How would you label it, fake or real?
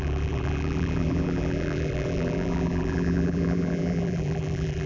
fake